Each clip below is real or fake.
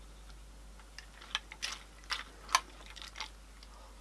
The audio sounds real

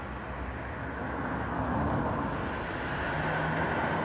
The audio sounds real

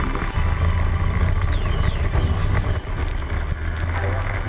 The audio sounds real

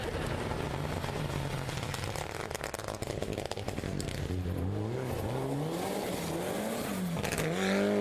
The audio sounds real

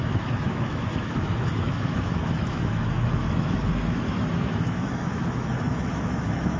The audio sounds fake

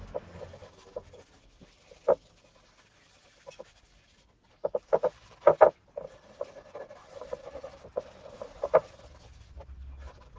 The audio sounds real